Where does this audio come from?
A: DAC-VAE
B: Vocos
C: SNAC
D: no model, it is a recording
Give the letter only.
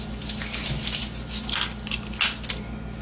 D